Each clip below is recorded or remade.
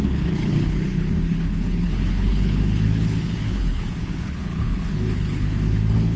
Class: remade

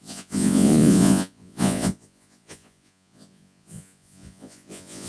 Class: remade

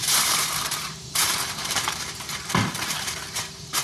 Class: remade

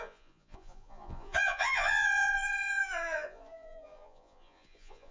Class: remade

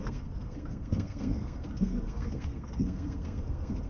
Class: remade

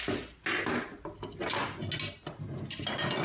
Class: recorded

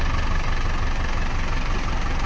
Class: remade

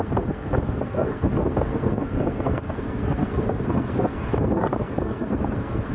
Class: remade